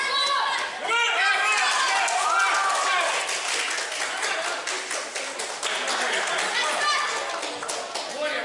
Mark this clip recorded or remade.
recorded